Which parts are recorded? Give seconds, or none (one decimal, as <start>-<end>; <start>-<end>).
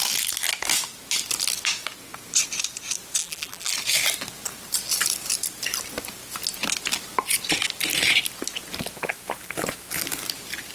0.0-3.2; 3.7-10.7